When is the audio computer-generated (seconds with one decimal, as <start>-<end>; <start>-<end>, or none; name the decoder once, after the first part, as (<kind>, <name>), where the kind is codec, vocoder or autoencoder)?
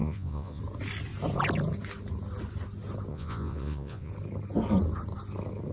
0.0-0.6 (vocoder, Vocos); 3.1-4.1